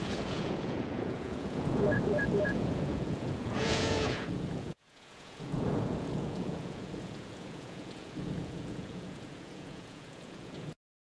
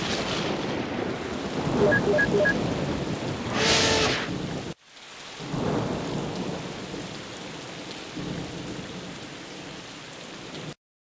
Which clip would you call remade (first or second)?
first